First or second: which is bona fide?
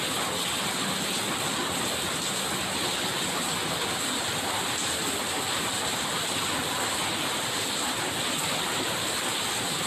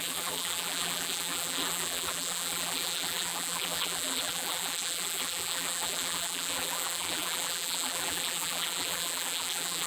first